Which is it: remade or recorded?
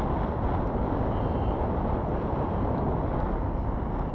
recorded